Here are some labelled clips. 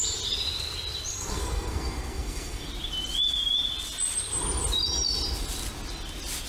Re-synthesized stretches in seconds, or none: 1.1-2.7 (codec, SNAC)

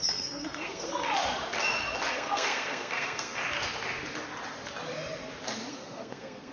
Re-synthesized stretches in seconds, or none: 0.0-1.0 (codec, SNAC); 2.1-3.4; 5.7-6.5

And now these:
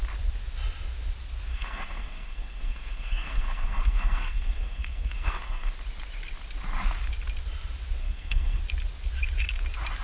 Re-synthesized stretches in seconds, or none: 1.5-5.7 (codec, SNAC); 8.0-8.6